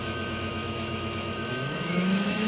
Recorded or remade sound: remade